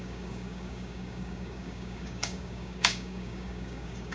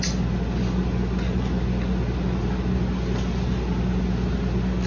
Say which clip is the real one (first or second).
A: second